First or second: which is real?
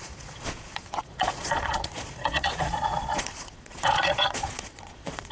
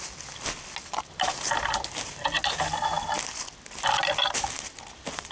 second